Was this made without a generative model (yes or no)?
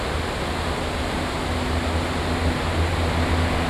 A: yes